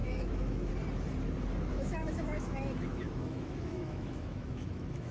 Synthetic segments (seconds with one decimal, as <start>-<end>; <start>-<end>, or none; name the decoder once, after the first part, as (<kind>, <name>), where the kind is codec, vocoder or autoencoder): 0.0-0.7 (autoencoder, DAC-VAE); 1.7-5.1